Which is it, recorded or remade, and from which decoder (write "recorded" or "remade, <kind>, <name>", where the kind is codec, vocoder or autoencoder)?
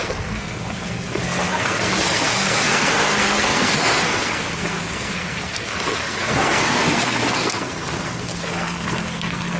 remade, codec, SNAC